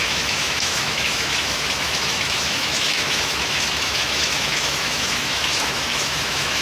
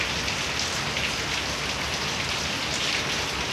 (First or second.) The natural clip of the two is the second